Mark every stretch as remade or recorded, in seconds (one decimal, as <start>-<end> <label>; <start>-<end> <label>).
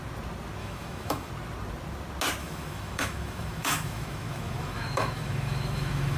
0.0-0.6 recorded; 0.6-1.3 remade; 1.3-2.4 recorded; 2.4-6.2 remade